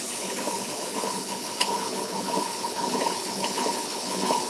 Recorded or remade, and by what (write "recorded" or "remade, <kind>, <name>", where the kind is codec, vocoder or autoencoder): remade, codec, HILCodec